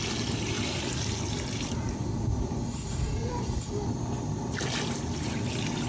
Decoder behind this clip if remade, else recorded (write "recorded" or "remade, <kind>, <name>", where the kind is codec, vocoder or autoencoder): recorded